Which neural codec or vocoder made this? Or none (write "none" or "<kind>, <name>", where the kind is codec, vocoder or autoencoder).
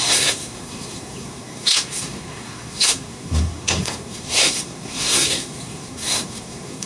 codec, SNAC